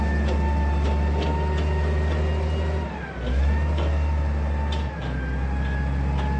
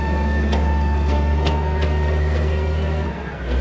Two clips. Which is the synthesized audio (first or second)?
second